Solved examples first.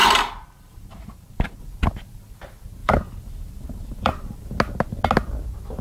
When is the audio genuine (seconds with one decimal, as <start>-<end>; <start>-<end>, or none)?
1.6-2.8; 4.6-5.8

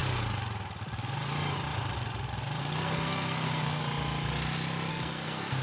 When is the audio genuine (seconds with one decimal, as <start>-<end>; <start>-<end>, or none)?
0.0-2.6; 3.8-4.9

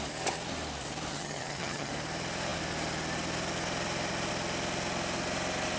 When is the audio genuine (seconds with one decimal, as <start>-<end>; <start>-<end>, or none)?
0.0-1.1; 1.9-5.8